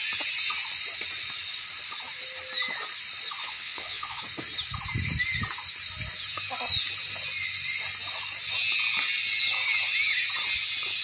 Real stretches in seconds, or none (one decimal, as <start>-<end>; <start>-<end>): 0.0-3.4; 4.2-11.0